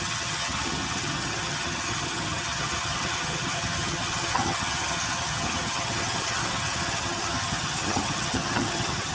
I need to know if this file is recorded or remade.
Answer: remade